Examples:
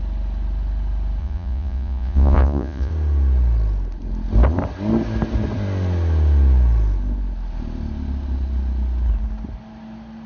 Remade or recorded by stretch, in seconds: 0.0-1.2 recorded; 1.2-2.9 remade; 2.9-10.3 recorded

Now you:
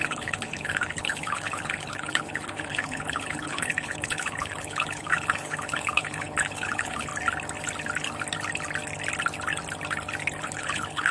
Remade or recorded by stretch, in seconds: 0.0-7.1 remade; 7.1-10.4 recorded; 10.4-11.1 remade

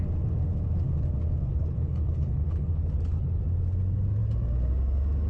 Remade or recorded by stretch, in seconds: 0.0-1.5 recorded; 1.5-3.4 remade; 3.4-5.3 recorded

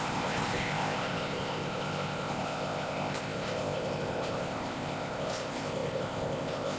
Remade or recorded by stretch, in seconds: 0.0-6.8 remade

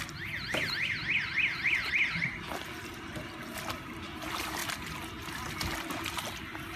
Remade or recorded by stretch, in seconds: 0.0-6.8 recorded

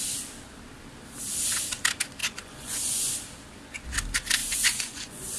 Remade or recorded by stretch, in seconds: 0.0-2.2 recorded; 2.2-3.1 remade; 3.1-4.4 recorded; 4.4-5.4 remade

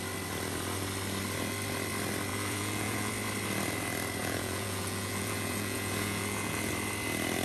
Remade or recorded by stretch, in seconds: 0.0-2.3 recorded; 2.3-3.1 remade; 3.1-4.2 recorded; 4.2-6.7 remade; 6.7-7.4 recorded